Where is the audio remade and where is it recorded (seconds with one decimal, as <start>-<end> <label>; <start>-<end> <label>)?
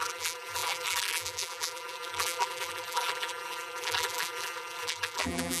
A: 0.0-5.6 remade